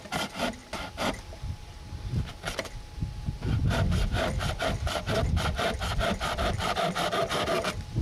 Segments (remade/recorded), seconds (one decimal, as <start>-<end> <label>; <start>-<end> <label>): 0.0-0.6 recorded; 0.6-2.3 remade; 2.3-3.6 recorded; 3.6-6.9 remade; 6.9-8.0 recorded